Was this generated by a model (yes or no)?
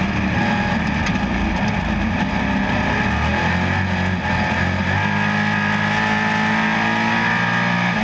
no